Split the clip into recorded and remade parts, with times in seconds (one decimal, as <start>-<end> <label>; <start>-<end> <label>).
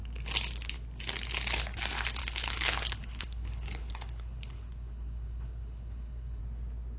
0.0-2.2 recorded; 2.2-6.4 remade; 6.4-7.0 recorded